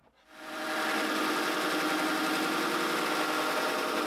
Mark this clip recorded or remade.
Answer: recorded